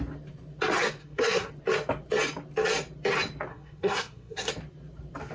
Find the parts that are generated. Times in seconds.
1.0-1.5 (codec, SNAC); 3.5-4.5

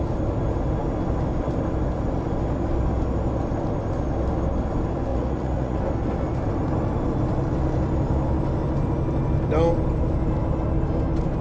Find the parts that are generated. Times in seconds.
5.1-5.8 (vocoder, Vocos)